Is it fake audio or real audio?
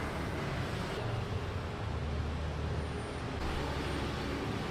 real